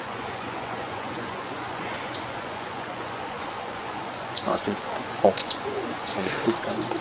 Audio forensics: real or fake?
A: fake